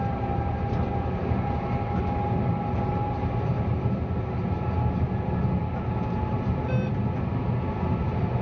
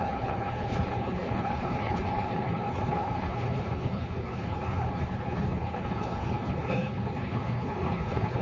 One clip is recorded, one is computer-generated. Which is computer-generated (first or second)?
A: second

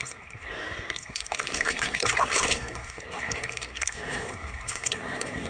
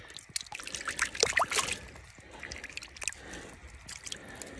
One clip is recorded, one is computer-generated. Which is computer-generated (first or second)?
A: first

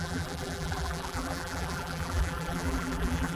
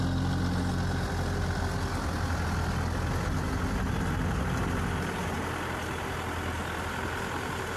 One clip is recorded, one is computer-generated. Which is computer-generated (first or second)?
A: first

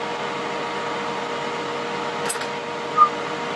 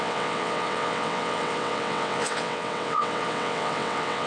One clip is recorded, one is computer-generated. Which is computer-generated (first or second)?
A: second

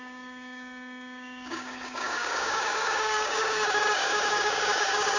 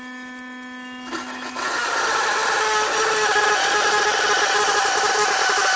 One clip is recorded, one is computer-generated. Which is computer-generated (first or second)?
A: first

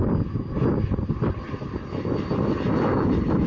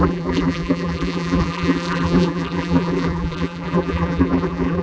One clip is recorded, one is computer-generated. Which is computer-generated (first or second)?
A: second